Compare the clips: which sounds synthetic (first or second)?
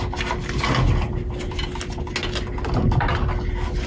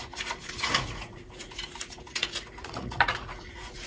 second